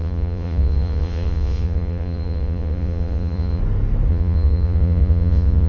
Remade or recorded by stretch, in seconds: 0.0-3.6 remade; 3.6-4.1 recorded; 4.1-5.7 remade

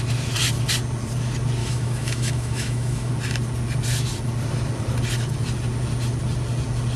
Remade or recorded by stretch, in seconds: 0.0-1.6 recorded; 1.6-3.1 remade; 3.1-7.0 recorded